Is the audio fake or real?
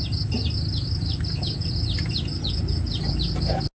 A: real